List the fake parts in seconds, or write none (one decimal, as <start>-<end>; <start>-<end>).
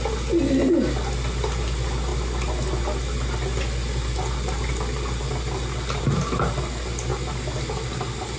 none